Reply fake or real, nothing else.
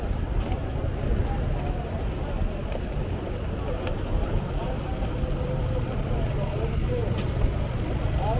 real